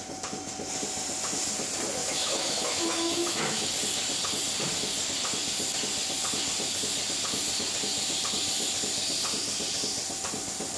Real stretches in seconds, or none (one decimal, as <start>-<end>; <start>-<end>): 0.0-2.0; 3.7-10.8